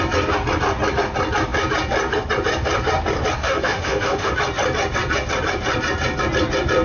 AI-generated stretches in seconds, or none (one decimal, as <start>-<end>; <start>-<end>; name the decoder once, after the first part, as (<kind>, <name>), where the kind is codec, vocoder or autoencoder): 3.4-4.3 (autoencoder, DAC-VAE)